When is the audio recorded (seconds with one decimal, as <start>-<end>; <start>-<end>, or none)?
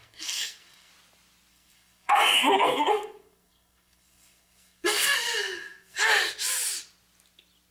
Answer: 0.9-1.5; 6.1-7.7